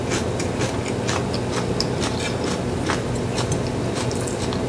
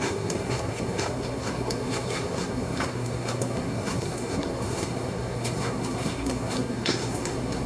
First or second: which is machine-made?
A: second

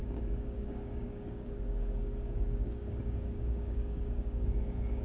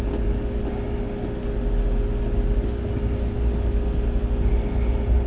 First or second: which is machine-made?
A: first